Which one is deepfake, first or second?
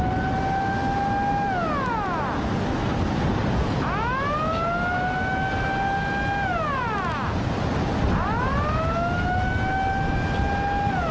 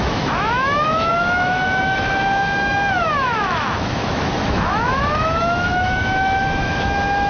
second